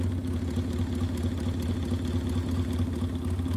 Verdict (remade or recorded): recorded